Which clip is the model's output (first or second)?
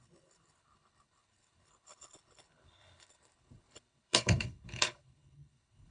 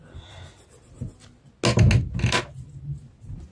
first